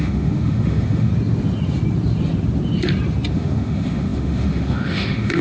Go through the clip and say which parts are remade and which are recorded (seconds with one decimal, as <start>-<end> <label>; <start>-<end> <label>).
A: 0.0-1.1 remade; 1.1-3.3 recorded; 3.3-5.4 remade